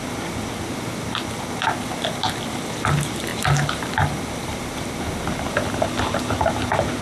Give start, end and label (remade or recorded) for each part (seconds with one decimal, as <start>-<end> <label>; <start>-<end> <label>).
0.0-3.3 recorded; 3.3-6.0 remade; 6.0-7.0 recorded